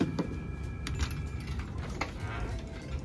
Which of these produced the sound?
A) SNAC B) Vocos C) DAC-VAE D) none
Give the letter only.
D